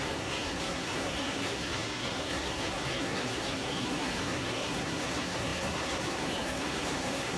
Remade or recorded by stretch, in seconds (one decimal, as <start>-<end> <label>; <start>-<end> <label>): 0.0-7.4 remade